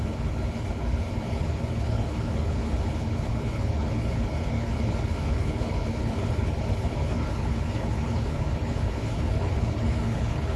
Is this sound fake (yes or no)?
yes